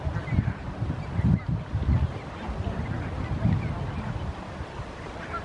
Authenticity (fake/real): real